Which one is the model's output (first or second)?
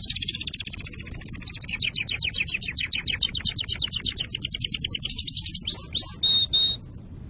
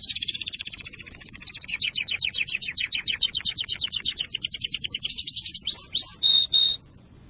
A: second